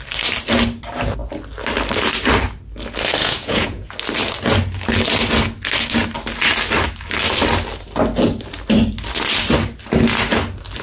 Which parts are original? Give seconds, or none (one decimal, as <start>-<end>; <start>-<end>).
0.0-3.2; 3.9-10.8